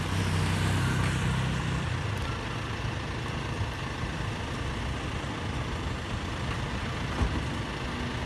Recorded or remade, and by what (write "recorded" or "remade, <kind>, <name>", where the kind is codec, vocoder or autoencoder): recorded